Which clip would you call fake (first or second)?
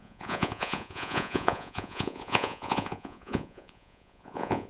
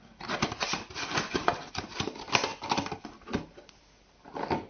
first